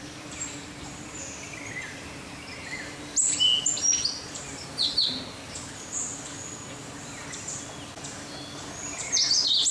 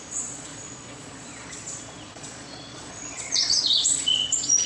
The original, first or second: first